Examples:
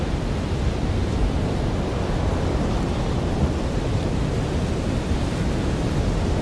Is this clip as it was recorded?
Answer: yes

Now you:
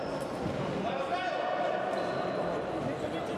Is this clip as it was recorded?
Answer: yes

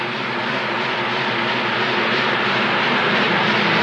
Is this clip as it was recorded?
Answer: yes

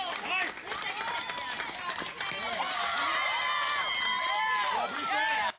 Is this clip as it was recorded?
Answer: yes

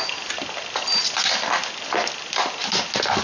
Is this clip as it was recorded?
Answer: yes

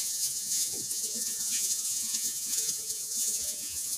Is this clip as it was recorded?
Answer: no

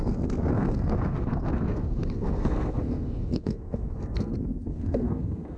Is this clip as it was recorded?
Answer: no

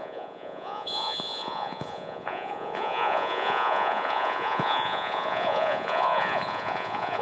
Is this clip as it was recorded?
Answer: no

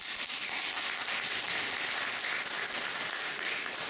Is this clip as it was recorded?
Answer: yes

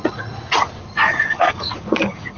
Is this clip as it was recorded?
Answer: no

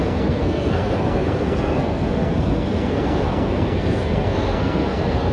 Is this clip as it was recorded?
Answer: no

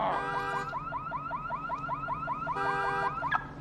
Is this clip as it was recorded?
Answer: yes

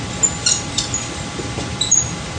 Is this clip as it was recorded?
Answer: yes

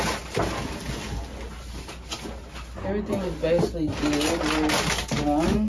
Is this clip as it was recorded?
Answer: yes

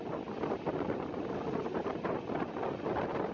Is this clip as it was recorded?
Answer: yes